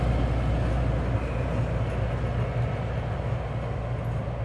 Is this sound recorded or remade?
recorded